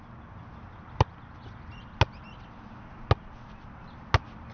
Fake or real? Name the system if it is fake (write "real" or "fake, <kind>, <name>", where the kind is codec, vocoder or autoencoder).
real